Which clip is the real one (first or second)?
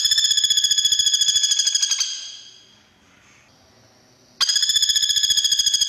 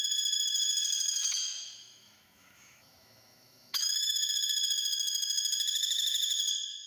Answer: first